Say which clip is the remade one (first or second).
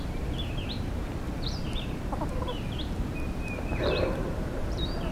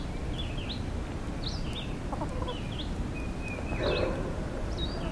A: first